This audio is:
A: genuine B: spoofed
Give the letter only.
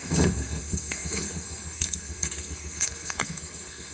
B